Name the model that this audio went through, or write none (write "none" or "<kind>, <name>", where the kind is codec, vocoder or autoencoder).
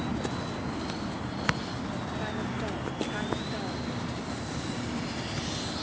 none